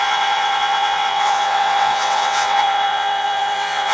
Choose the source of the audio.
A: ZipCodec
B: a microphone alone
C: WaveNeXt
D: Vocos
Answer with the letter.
C